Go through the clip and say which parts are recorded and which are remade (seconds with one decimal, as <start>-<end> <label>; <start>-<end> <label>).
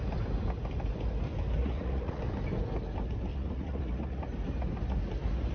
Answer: 0.0-1.6 recorded; 1.6-2.2 remade; 2.2-3.3 recorded; 3.3-4.2 remade; 4.2-5.5 recorded